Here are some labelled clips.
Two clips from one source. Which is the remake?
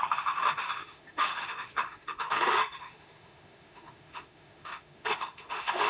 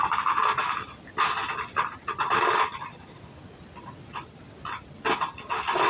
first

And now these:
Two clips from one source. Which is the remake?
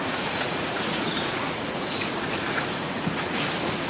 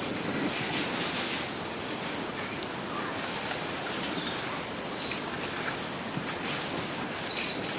first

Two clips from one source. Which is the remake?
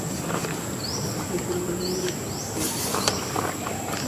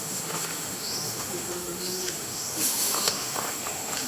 second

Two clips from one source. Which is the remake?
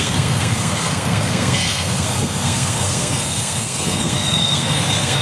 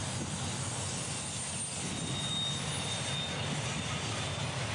first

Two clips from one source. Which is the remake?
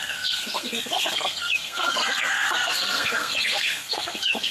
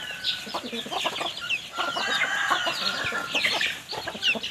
first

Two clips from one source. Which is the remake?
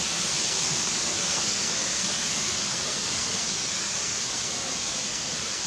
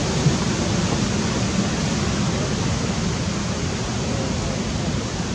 first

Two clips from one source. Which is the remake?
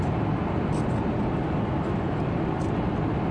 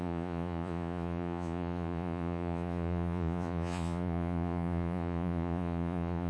second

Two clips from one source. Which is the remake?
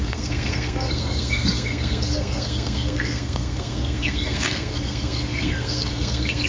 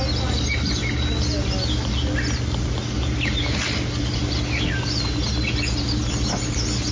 first